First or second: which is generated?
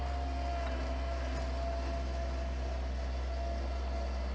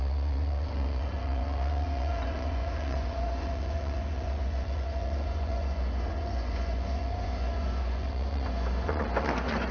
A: second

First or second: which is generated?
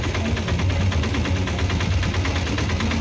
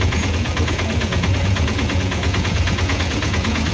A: second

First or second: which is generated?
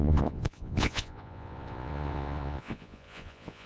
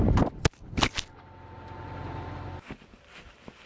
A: first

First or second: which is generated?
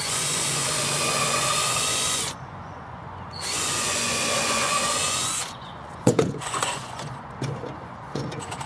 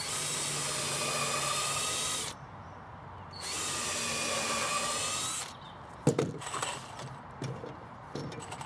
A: first